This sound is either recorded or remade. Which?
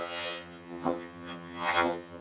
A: remade